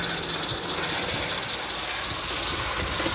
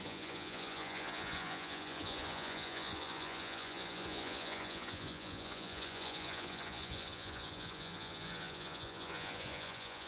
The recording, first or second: first